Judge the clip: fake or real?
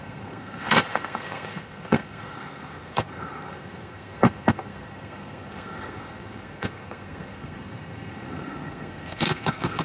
fake